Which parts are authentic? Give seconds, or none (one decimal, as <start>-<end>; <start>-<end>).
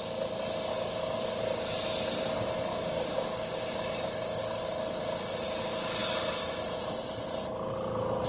0.0-0.7; 1.4-2.7; 5.0-8.3